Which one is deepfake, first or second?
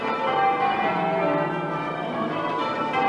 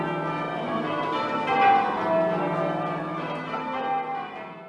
first